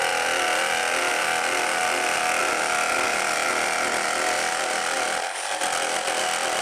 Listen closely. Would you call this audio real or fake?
real